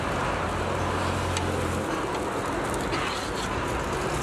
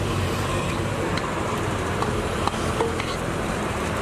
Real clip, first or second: first